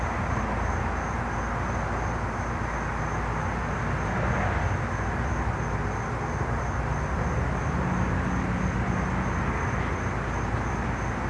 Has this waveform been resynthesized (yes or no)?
no